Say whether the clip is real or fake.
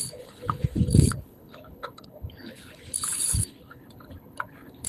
fake